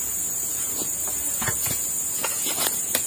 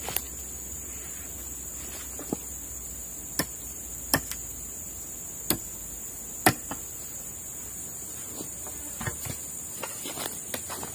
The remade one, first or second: first